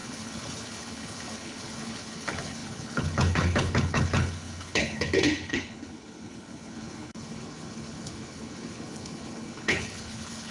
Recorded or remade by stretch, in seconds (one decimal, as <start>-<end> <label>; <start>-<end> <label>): 0.0-10.5 remade